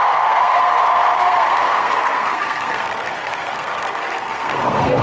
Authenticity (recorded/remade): remade